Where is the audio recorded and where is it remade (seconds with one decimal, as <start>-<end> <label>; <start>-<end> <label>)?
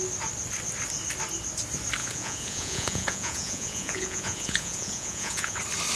0.0-2.0 recorded; 2.0-5.6 remade; 5.6-6.0 recorded